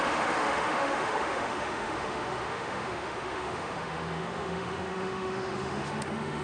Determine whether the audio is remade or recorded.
remade